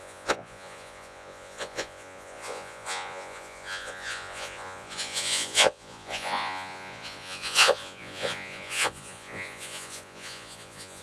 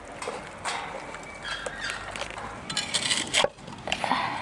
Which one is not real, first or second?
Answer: first